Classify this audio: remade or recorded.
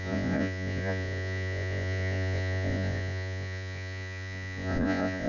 remade